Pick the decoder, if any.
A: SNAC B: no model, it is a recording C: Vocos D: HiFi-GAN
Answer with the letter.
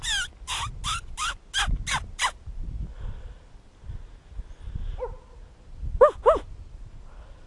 B